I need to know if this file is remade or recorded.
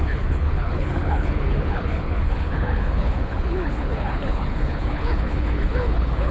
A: remade